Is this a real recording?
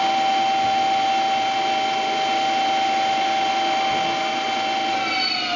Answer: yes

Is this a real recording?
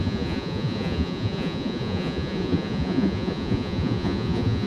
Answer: no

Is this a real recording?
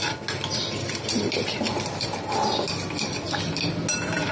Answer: yes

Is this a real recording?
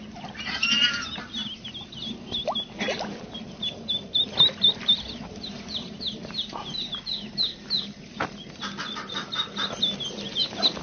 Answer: yes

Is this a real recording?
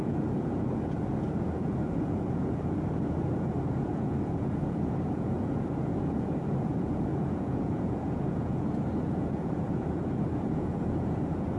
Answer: no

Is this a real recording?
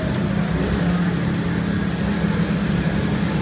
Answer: yes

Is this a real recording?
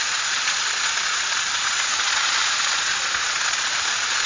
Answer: no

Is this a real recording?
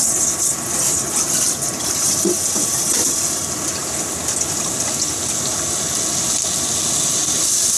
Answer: yes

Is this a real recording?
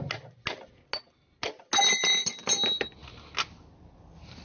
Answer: yes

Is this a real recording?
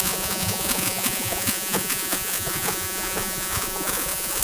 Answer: no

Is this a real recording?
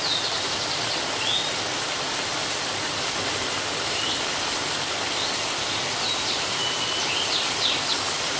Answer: yes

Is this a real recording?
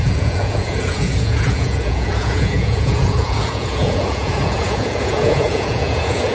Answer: no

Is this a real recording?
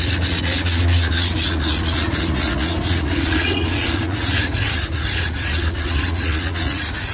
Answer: no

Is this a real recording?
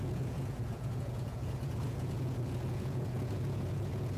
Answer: no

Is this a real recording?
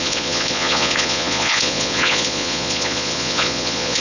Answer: no